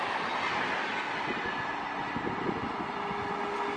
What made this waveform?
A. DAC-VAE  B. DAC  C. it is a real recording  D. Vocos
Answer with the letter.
C